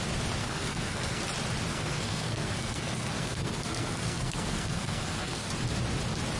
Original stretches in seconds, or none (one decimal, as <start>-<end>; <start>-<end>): 0.0-0.4; 1.2-1.7; 5.5-6.4